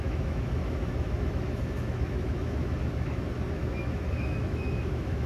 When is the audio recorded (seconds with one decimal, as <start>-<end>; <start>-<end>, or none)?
none